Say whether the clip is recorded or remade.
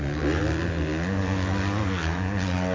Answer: recorded